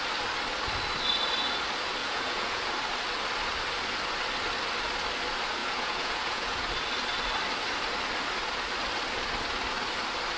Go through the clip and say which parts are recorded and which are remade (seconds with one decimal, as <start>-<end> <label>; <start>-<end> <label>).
0.0-2.0 recorded; 2.0-2.7 remade; 2.7-5.6 recorded; 5.6-6.7 remade; 6.7-10.4 recorded

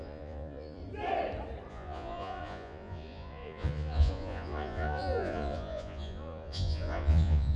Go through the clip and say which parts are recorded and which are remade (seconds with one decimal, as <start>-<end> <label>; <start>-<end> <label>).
0.0-0.8 remade; 0.8-1.7 recorded; 1.7-7.6 remade

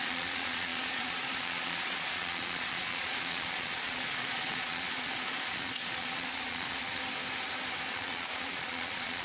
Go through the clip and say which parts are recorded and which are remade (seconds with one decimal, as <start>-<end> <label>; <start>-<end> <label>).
0.0-7.0 remade; 7.0-7.9 recorded; 7.9-9.2 remade

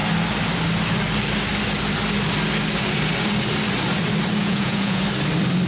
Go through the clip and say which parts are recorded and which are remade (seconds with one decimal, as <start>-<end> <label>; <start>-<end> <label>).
0.0-4.4 recorded; 4.4-5.0 remade; 5.0-5.7 recorded

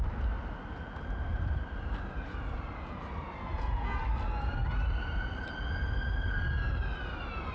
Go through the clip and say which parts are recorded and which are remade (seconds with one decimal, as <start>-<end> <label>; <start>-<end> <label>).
0.0-3.5 recorded; 3.5-4.0 remade; 4.0-7.5 recorded

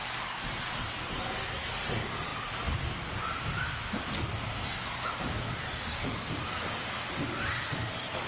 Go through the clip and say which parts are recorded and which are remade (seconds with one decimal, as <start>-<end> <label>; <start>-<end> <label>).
0.0-8.3 recorded